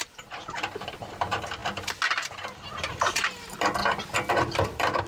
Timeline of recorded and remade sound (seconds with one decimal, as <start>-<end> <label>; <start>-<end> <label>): 0.0-1.6 remade; 1.6-2.8 recorded; 2.8-3.8 remade; 3.8-4.3 recorded; 4.3-5.1 remade